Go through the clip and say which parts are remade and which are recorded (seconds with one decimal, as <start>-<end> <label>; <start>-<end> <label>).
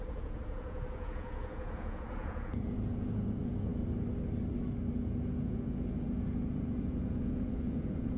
0.0-3.7 remade; 3.7-5.0 recorded; 5.0-8.2 remade